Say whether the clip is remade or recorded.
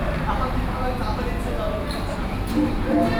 recorded